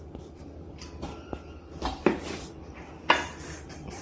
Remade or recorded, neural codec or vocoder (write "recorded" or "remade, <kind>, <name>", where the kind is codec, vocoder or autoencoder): remade, vocoder, BigVGAN v2